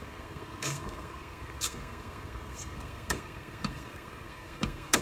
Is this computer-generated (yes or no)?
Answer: yes